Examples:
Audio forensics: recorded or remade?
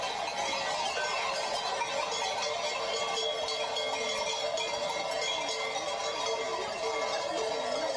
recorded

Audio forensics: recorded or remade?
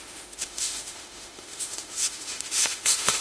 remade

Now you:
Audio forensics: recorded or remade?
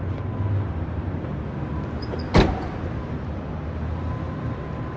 recorded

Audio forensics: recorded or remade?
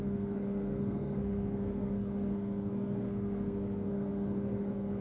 remade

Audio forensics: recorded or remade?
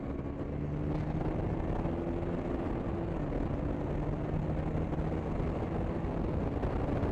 recorded